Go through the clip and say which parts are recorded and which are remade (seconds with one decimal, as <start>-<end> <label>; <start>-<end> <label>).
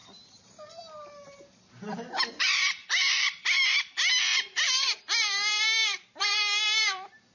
0.0-2.4 recorded; 2.4-7.3 remade